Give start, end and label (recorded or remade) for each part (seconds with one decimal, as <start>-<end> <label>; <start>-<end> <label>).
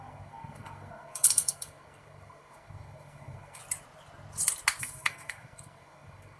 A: 0.0-3.6 remade; 3.6-4.8 recorded; 4.8-6.4 remade